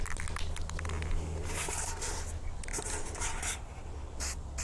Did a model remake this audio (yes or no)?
no